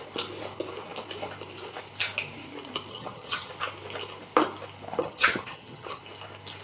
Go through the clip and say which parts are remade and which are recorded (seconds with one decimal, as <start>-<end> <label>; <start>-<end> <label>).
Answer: 0.0-2.9 recorded; 2.9-3.5 remade; 3.5-5.0 recorded; 5.0-6.0 remade; 6.0-6.6 recorded